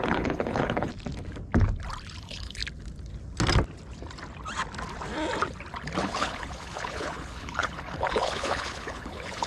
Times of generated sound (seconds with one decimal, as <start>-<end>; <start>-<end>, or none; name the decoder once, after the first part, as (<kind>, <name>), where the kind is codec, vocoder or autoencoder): 0.0-0.9 (codec, HILCodec); 2.2-2.6; 6.0-9.5